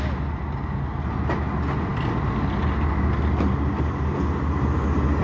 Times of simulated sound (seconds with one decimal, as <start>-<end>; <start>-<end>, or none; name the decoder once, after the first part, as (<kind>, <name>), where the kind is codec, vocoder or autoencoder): none